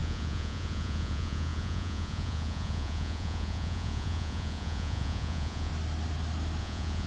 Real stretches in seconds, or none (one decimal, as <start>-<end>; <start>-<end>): 5.7-6.6